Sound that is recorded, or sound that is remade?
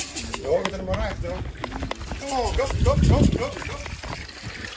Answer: recorded